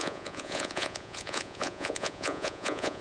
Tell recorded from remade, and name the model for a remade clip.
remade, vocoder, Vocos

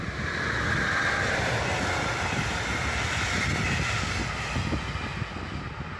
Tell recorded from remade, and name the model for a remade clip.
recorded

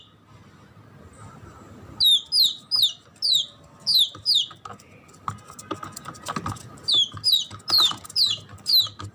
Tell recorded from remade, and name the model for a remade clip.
recorded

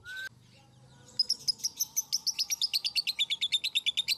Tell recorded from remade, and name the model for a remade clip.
recorded